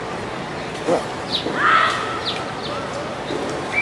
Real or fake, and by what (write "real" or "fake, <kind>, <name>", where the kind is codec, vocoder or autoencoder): real